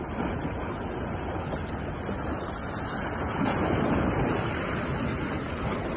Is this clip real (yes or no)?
yes